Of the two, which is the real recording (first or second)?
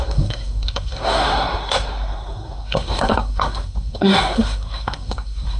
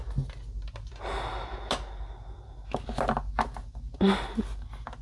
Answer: second